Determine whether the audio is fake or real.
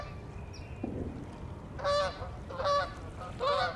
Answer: real